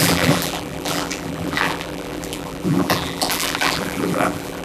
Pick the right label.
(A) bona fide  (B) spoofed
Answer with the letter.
B